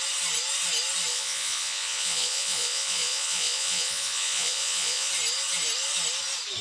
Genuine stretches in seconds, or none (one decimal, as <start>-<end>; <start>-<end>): 0.0-1.1; 5.1-6.6